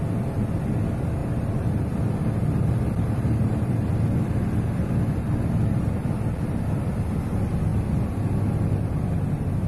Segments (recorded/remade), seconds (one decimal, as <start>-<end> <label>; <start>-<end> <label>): 0.0-1.2 recorded; 1.2-2.0 remade; 2.0-2.4 recorded; 2.4-3.9 remade; 3.9-9.7 recorded